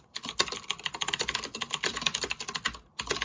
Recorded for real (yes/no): yes